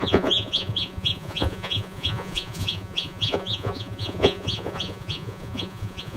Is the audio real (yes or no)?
no